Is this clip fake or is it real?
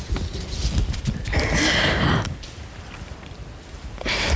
real